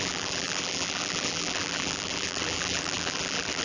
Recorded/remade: remade